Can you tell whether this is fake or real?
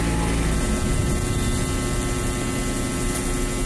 real